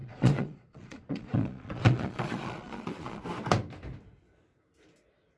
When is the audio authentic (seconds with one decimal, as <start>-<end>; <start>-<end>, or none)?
3.2-5.4